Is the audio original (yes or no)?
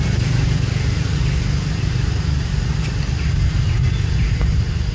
yes